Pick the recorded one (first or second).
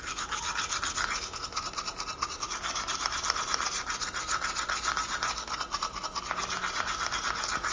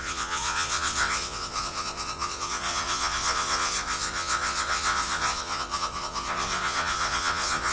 first